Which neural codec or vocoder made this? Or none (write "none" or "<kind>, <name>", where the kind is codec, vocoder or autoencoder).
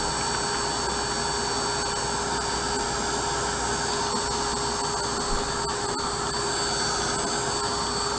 none